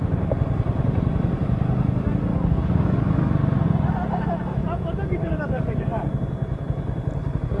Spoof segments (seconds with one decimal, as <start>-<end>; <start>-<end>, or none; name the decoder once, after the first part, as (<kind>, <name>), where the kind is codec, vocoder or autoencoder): 2.3-3.3 (codec, DAC); 5.2-6.1